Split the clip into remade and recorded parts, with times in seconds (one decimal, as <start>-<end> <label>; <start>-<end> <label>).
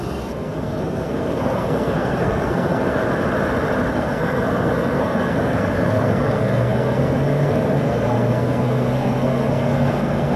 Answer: 0.0-3.0 remade; 3.0-3.9 recorded; 3.9-10.4 remade